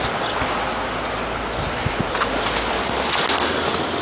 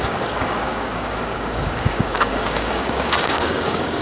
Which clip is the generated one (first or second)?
second